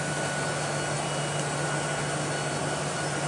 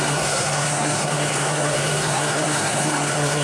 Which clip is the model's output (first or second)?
second